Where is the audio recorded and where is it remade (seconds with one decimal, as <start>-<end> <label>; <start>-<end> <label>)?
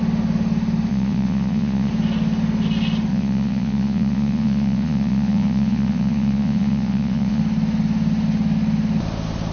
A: 0.0-0.9 recorded; 0.9-1.9 remade; 1.9-3.1 recorded; 3.1-7.4 remade; 7.4-9.5 recorded